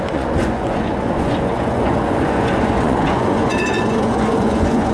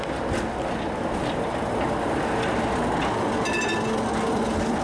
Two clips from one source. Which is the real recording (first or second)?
second